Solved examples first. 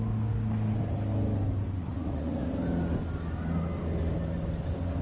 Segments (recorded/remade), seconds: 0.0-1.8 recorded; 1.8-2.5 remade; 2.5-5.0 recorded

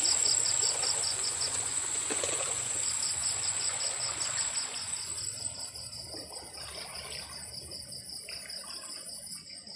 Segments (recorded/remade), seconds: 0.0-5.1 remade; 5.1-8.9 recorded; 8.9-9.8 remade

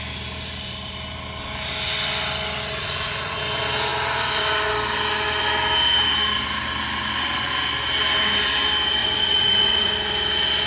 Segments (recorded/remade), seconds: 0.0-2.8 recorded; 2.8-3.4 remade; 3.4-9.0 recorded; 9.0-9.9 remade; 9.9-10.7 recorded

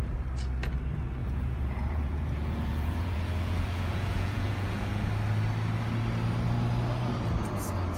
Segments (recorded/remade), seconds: 0.0-1.2 recorded; 1.2-5.1 remade; 5.1-8.0 recorded

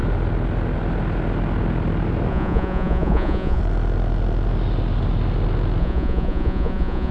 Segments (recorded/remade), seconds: 0.0-2.3 recorded; 2.3-3.6 remade; 3.6-5.8 recorded; 5.8-7.1 remade

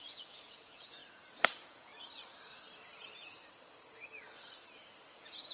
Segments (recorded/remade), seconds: 0.0-1.0 remade; 1.0-1.5 recorded; 1.5-1.9 remade; 1.9-5.1 recorded; 5.1-5.5 remade

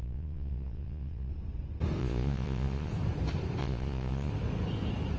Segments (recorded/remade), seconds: 0.0-1.3 remade; 1.3-2.0 recorded; 2.0-2.9 remade; 2.9-3.6 recorded; 3.6-4.3 remade; 4.3-5.2 recorded